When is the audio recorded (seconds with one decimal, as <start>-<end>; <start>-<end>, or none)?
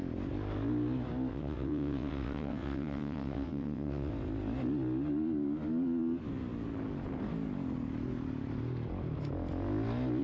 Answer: 0.0-1.3; 4.1-10.2